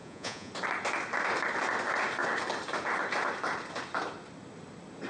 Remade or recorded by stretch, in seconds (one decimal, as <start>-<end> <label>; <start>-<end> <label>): 0.0-0.5 remade; 0.5-5.1 recorded